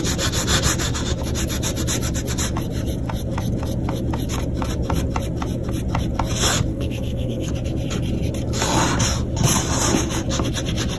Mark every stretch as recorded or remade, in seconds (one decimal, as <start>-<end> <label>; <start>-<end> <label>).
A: 0.0-6.7 recorded; 6.7-7.5 remade; 7.5-11.0 recorded

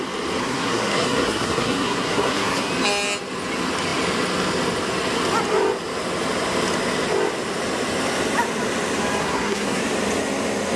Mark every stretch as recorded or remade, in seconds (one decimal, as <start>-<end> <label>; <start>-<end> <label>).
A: 0.0-0.4 recorded; 0.4-2.7 remade; 2.7-9.2 recorded; 9.2-9.8 remade; 9.8-10.8 recorded

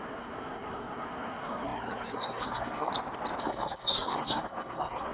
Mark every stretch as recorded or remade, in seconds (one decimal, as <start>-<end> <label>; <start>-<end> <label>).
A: 0.0-2.9 remade; 2.9-3.4 recorded; 3.4-5.1 remade

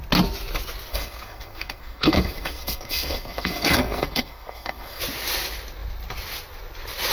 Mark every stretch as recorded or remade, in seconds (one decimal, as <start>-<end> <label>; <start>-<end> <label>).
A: 0.0-0.9 recorded; 0.9-5.0 remade; 5.0-7.1 recorded

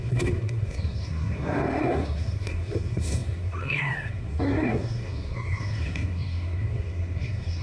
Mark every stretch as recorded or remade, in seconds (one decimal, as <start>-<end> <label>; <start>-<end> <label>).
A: 0.0-7.6 remade